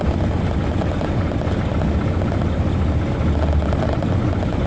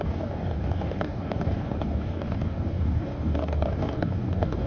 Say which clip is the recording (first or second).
first